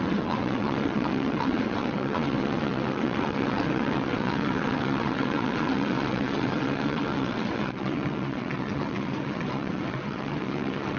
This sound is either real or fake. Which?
fake